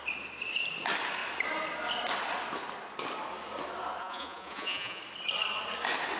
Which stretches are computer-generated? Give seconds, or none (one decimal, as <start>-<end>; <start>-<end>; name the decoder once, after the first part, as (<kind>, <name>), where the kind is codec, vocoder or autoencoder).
4.0-5.0 (vocoder, Vocos)